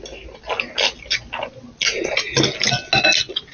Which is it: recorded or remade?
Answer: recorded